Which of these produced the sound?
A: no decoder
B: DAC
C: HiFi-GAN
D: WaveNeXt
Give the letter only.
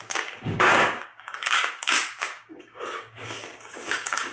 B